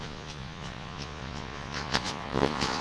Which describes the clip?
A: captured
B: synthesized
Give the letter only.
B